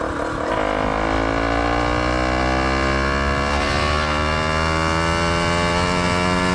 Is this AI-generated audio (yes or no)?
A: no